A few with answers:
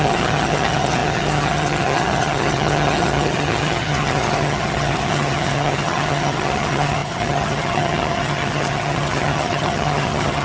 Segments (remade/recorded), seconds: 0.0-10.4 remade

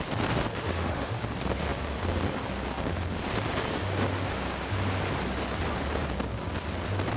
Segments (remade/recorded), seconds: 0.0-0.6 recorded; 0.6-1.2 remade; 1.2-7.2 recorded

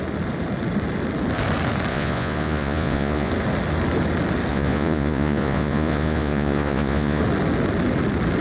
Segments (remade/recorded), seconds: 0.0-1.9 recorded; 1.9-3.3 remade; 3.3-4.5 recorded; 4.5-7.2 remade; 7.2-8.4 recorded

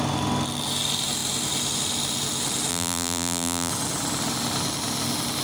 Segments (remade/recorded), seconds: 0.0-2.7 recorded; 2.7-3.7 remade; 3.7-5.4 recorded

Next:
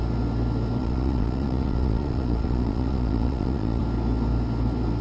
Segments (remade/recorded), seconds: 0.0-0.8 recorded; 0.8-3.8 remade; 3.8-5.0 recorded

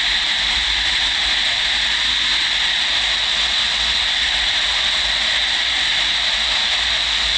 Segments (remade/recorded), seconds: 0.0-7.4 recorded

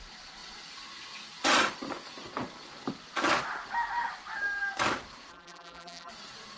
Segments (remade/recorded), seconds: 0.0-5.3 recorded; 5.3-6.1 remade; 6.1-6.6 recorded